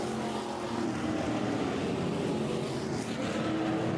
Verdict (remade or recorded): recorded